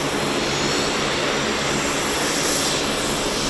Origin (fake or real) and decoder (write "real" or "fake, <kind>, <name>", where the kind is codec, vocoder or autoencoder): real